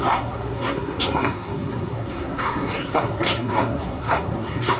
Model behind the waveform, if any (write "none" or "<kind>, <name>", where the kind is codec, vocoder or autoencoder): codec, SNAC